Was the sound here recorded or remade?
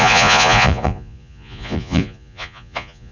remade